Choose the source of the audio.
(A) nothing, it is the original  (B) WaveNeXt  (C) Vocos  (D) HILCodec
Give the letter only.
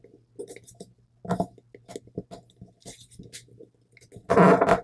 A